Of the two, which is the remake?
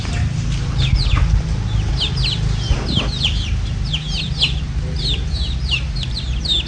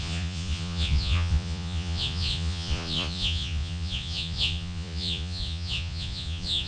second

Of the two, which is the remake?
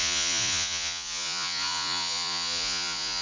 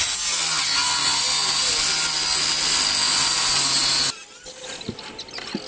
first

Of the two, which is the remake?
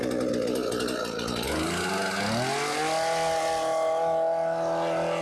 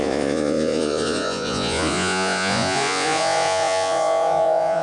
second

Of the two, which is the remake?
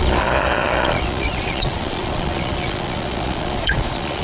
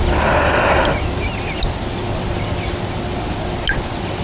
first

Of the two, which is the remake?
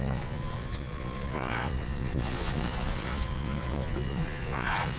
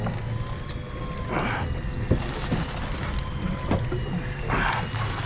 first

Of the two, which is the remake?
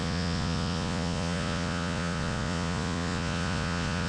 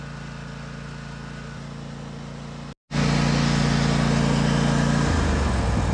first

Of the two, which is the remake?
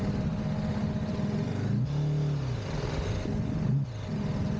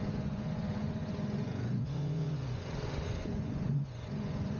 second